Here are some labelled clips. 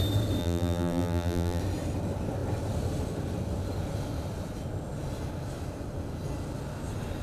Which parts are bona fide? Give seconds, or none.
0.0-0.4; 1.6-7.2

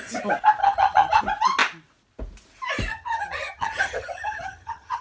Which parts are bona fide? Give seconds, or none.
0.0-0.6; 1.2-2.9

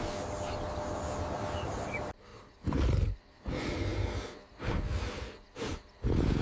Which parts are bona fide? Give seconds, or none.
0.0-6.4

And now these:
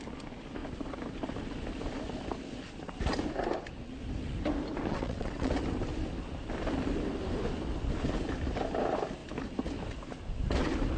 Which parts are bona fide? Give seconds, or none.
0.0-4.9; 5.5-11.0

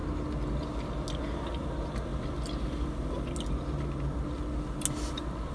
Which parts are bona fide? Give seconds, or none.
0.0-5.5